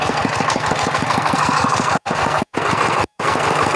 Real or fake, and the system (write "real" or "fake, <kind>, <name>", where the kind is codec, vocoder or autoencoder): fake, codec, SNAC